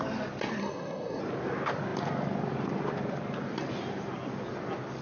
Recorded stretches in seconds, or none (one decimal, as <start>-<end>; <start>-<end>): 0.0-0.6; 1.2-5.0